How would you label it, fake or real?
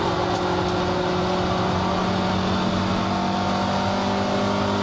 real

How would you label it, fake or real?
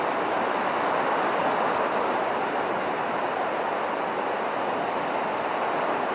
real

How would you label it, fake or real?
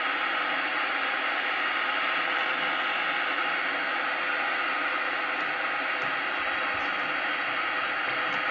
real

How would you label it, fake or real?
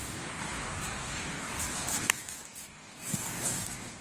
fake